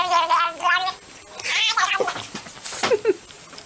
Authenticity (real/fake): real